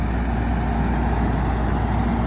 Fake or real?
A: real